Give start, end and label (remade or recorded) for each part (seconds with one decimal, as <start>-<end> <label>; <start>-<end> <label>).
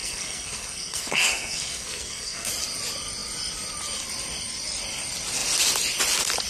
0.0-2.5 remade; 2.5-6.5 recorded